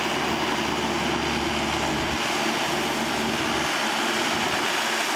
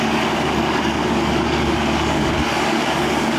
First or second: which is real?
first